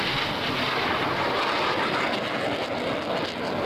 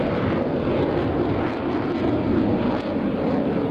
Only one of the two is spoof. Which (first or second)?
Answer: second